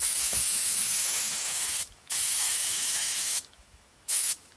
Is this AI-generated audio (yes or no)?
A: yes